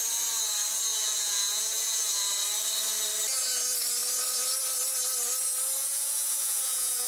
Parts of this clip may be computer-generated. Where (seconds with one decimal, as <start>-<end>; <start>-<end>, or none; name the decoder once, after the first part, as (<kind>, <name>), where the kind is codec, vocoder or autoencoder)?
0.9-2.2 (vocoder, Vocos); 5.8-7.1

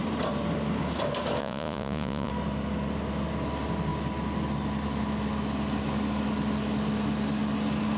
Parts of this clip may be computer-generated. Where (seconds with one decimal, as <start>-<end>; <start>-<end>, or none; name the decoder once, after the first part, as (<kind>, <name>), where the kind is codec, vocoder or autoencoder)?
1.4-2.3 (vocoder, Vocos)